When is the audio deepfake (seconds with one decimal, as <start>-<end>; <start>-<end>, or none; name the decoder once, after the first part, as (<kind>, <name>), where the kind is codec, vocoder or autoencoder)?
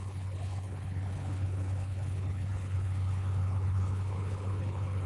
0.0-5.1 (codec, HILCodec)